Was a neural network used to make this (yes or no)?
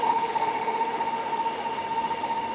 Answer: yes